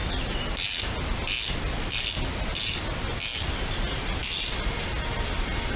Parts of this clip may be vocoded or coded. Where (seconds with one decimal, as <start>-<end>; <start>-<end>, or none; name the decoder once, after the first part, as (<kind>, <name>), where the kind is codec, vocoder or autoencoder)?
none